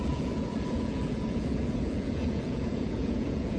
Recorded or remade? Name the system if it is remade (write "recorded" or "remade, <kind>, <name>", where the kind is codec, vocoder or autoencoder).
remade, vocoder, Vocos